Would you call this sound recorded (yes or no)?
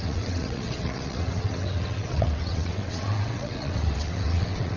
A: no